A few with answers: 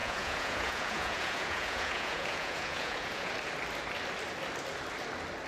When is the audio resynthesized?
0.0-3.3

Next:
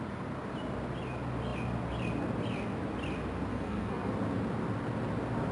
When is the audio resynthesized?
3.5-4.1

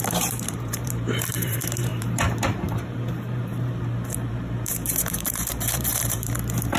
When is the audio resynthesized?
0.0-6.8

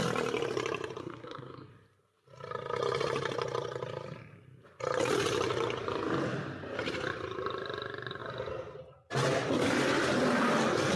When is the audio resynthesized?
1.0-1.7

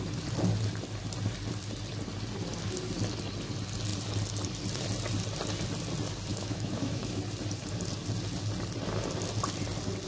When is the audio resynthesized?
6.3-7.2

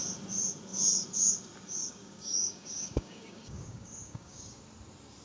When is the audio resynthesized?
1.8-4.6